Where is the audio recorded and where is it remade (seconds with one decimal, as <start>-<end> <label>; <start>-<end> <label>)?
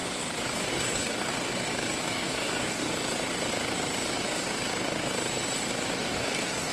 0.0-0.7 recorded; 0.7-1.3 remade; 1.3-2.0 recorded; 2.0-2.8 remade; 2.8-6.0 recorded; 6.0-6.7 remade